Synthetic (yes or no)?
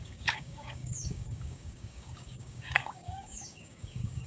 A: yes